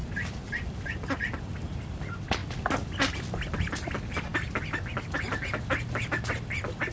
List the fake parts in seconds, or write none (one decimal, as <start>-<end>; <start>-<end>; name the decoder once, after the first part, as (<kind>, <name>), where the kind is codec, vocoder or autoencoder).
none